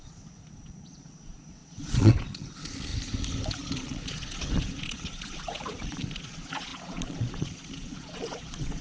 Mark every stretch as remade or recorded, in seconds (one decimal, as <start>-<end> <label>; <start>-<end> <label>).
0.0-2.9 remade; 2.9-3.5 recorded; 3.5-8.8 remade